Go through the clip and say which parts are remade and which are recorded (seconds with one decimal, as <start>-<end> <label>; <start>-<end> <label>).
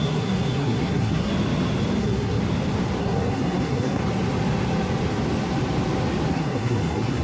0.0-1.3 remade; 1.3-2.0 recorded; 2.0-2.4 remade; 2.4-3.0 recorded; 3.0-4.0 remade; 4.0-6.3 recorded; 6.3-7.2 remade